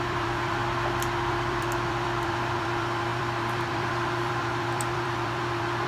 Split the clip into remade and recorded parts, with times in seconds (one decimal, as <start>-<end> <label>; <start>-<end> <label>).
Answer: 0.0-0.6 remade; 0.6-1.3 recorded; 1.3-5.9 remade